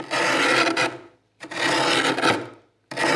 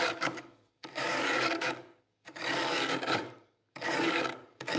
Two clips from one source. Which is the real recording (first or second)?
first